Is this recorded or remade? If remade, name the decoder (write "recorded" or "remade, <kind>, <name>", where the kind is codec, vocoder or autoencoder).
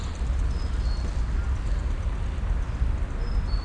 recorded